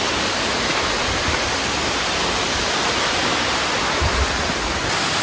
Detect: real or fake real